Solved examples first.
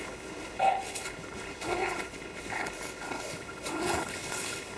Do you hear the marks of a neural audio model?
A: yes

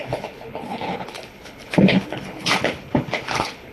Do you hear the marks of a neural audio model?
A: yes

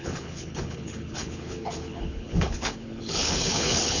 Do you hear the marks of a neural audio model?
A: yes